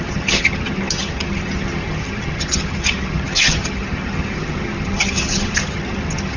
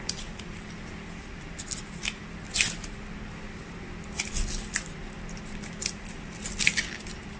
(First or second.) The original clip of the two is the second